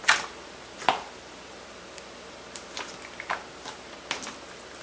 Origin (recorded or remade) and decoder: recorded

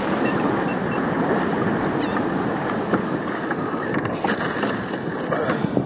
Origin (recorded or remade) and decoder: recorded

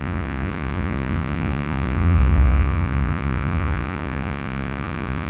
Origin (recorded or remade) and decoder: remade, vocoder, Vocos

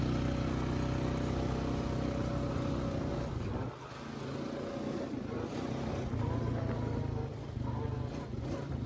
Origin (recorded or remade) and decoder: recorded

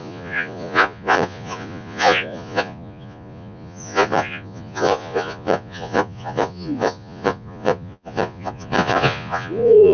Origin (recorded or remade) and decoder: remade, vocoder, Vocos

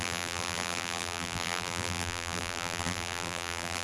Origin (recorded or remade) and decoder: remade, vocoder, BigVGAN v2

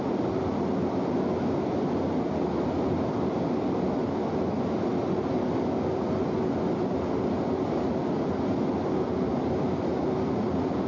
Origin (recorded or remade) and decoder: recorded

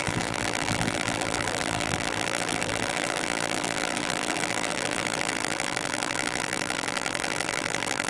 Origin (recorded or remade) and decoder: remade, vocoder, BigVGAN v2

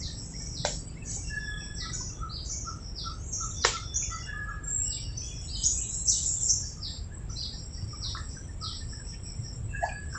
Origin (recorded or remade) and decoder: recorded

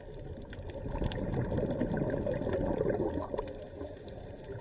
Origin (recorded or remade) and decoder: recorded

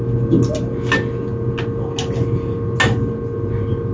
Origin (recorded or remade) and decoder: recorded